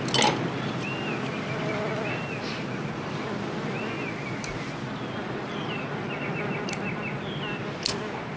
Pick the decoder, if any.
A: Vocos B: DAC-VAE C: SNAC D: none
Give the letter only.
D